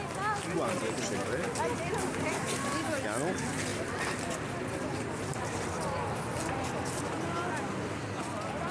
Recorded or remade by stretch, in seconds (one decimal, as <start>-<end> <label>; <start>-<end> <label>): 0.0-8.7 recorded